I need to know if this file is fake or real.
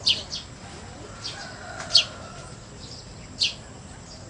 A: real